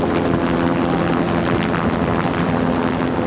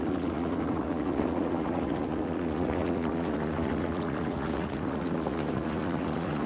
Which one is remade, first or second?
second